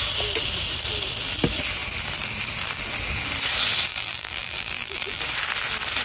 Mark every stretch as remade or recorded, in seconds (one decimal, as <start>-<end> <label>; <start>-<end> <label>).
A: 0.0-3.9 recorded; 3.9-5.2 remade; 5.2-6.0 recorded